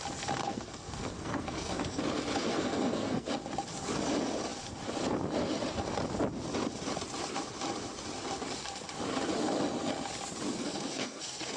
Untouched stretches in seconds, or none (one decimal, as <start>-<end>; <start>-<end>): 0.0-0.4; 2.0-2.5; 3.3-10.6